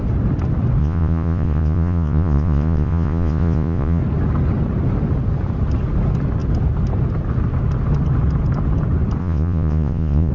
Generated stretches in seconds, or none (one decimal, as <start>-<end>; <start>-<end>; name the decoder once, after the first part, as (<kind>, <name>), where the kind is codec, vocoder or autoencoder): 0.8-4.0 (vocoder, Vocos); 9.2-10.3